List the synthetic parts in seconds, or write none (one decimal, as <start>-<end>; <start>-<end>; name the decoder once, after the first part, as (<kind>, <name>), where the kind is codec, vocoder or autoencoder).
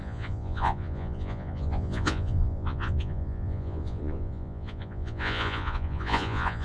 0.0-6.6 (vocoder, Vocos)